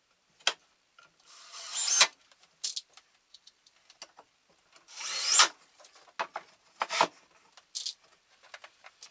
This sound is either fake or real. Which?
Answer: real